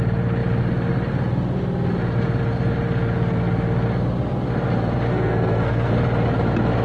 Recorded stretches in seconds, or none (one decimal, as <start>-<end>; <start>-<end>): 0.0-5.1; 5.9-6.8